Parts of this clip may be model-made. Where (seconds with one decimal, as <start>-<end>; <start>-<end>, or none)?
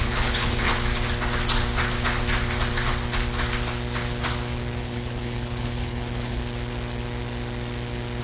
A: 0.0-0.7; 4.8-6.4